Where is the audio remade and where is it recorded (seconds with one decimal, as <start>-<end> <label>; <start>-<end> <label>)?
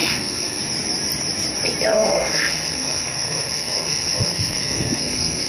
0.0-0.6 remade; 0.6-1.9 recorded; 1.9-5.5 remade